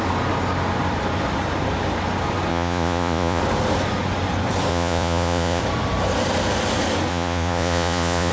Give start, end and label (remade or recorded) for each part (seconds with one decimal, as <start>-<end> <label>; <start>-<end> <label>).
0.0-2.5 recorded; 2.5-3.4 remade; 3.4-4.7 recorded; 4.7-5.6 remade; 5.6-7.1 recorded; 7.1-8.3 remade